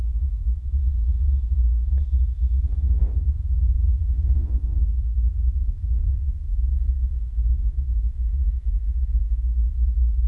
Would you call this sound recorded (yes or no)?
no